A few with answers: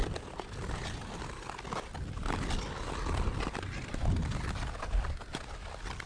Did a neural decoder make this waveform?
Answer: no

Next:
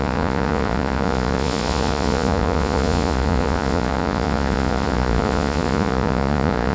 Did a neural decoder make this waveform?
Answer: yes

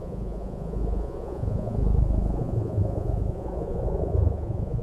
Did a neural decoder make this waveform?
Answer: yes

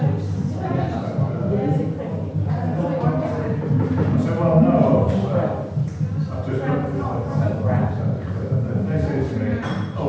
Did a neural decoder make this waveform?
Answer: no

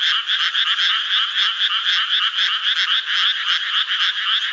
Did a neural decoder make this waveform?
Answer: no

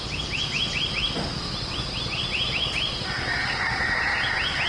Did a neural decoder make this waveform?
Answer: no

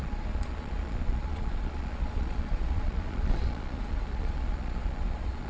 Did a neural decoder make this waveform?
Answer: yes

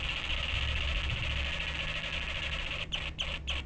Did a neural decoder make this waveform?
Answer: no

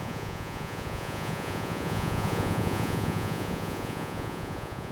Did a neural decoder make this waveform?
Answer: yes